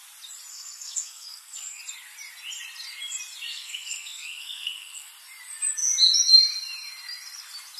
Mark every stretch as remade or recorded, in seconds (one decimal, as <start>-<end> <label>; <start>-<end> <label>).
0.0-0.5 recorded; 0.5-1.8 remade; 1.8-3.5 recorded; 3.5-5.1 remade; 5.1-7.8 recorded